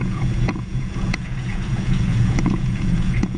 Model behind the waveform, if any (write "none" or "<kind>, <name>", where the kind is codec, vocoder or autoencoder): vocoder, Vocos